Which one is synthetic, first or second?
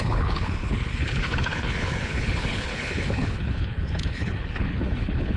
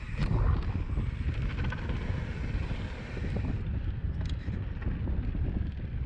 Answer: first